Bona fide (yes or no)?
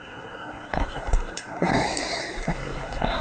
no